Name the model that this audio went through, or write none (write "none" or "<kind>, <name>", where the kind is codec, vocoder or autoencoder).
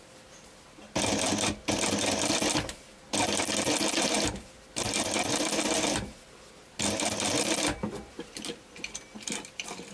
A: none